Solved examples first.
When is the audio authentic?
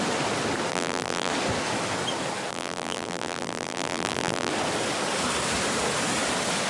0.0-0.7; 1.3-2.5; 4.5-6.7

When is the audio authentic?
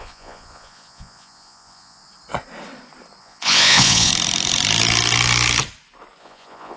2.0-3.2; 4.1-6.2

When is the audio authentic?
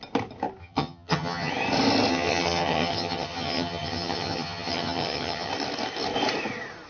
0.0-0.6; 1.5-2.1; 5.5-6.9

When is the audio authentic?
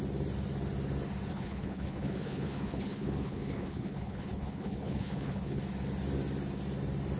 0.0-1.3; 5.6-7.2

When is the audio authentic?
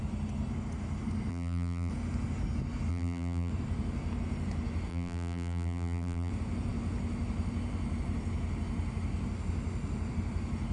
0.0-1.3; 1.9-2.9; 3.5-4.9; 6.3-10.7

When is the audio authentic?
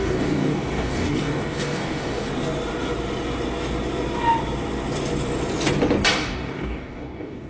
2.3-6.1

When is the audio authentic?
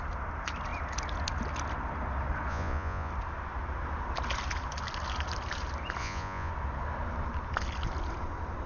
0.0-2.5; 3.1-6.0; 6.5-8.7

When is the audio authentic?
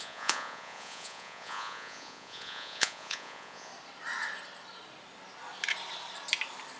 3.7-6.8